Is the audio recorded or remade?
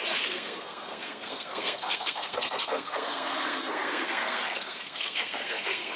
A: remade